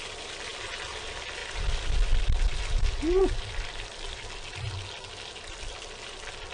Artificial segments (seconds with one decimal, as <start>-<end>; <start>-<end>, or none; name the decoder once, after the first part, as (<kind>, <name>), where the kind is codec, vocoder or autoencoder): none